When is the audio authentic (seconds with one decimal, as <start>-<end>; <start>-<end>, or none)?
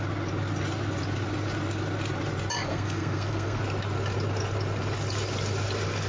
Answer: 0.0-2.7; 3.6-6.1